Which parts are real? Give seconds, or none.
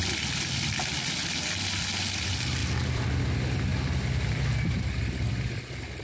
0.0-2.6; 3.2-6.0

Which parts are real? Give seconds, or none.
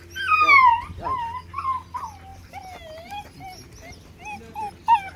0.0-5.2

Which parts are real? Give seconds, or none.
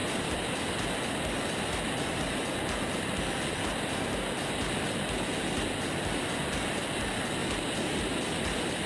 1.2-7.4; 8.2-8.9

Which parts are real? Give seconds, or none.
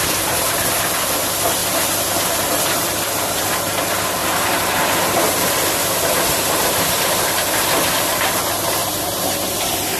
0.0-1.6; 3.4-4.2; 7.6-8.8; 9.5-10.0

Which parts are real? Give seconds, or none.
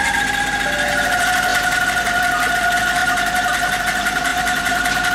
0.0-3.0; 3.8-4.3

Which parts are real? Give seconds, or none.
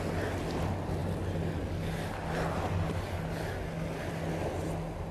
0.0-5.1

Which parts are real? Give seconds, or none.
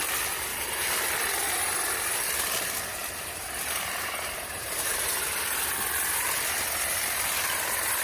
0.0-0.5; 1.0-2.9; 5.6-8.0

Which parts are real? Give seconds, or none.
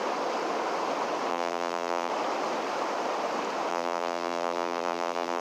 0.0-1.3; 2.1-3.7